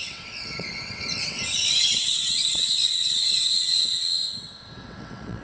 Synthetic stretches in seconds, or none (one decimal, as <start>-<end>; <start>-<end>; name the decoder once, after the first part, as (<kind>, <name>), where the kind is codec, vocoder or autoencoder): 0.0-5.4 (vocoder, WaveNeXt)